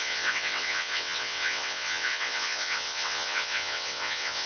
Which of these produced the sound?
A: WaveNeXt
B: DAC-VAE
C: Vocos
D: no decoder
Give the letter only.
A